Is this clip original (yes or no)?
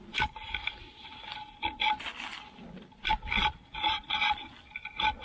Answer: yes